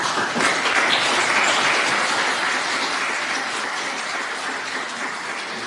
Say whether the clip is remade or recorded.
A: recorded